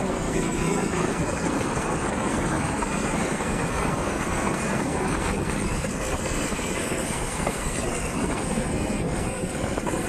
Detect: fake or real fake